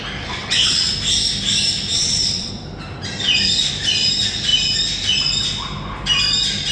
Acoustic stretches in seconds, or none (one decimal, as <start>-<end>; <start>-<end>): 0.0-0.4; 0.9-1.9; 2.5-6.7